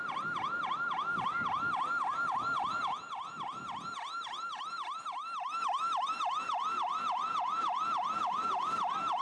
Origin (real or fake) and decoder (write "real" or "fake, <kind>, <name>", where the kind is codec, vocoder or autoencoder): real